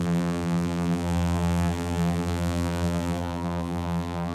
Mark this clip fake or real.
fake